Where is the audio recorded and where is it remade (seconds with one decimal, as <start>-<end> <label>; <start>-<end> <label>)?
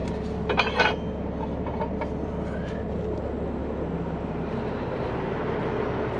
0.0-6.2 recorded